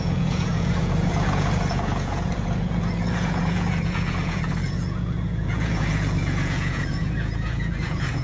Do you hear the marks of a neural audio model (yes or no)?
yes